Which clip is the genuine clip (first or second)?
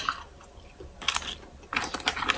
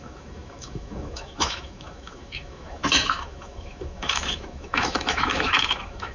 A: first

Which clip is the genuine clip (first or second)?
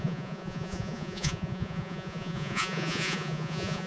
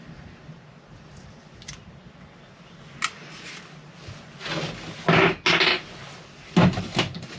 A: second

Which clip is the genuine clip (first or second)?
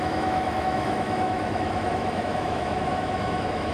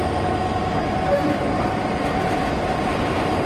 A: second